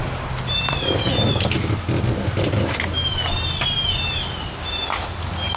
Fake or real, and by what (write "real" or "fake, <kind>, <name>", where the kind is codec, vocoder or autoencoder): real